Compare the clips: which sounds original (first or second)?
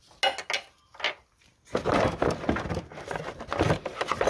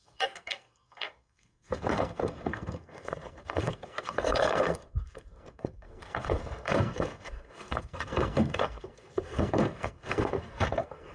first